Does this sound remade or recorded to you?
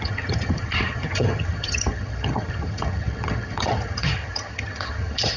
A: remade